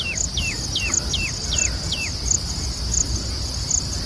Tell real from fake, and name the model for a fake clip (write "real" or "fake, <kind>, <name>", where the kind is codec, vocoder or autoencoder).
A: real